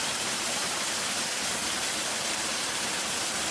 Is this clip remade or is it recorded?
recorded